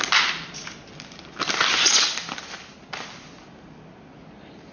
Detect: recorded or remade recorded